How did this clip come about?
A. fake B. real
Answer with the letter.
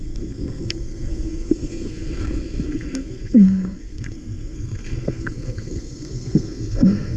A